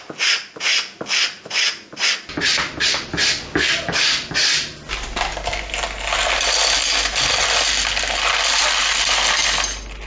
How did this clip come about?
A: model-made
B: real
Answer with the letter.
B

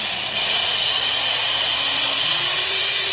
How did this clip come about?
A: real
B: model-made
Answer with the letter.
B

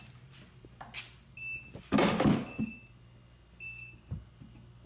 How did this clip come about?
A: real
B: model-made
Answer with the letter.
A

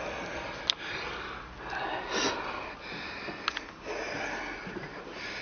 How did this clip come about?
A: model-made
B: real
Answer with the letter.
B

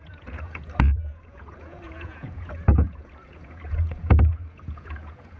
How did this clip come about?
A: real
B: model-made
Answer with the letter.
B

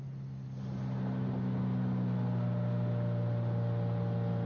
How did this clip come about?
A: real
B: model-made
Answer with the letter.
A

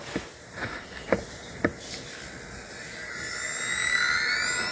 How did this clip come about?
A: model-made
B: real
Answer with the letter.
B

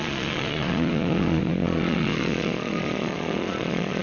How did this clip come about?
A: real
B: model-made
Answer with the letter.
B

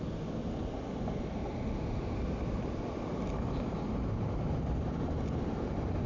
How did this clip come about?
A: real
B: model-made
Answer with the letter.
A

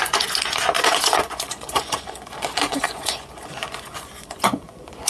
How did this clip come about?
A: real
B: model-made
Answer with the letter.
B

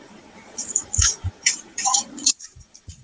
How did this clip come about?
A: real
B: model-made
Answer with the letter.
B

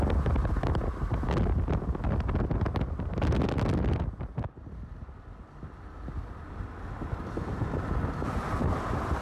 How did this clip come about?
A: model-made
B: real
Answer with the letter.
B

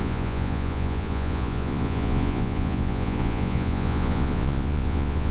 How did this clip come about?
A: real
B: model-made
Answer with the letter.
B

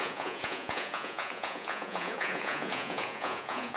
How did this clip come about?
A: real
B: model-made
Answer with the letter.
B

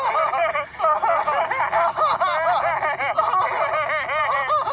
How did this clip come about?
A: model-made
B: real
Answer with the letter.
B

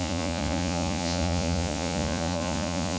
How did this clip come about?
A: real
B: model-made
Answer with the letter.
B